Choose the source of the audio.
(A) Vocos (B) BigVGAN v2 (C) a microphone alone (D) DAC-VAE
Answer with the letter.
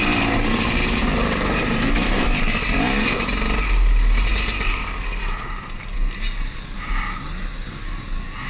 C